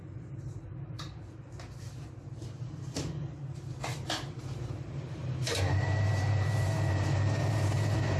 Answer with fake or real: fake